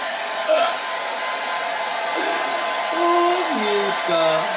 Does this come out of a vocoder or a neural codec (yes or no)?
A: no